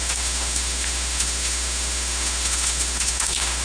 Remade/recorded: remade